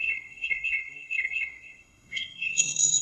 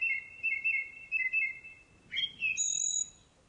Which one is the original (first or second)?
second